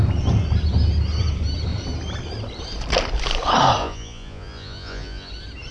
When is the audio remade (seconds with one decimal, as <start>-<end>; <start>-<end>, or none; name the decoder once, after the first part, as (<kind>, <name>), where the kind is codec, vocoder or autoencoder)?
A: 3.8-5.3 (vocoder, Vocos)